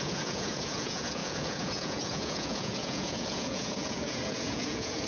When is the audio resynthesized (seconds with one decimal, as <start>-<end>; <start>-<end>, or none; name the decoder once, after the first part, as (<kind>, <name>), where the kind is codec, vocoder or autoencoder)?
0.0-5.1 (vocoder, Vocos)